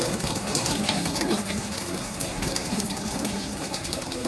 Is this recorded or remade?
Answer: remade